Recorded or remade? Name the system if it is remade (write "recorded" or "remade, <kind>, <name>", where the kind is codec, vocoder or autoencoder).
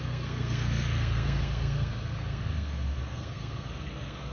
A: remade, codec, SNAC